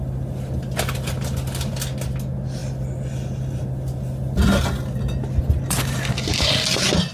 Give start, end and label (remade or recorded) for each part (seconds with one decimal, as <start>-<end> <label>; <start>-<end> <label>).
0.0-7.1 recorded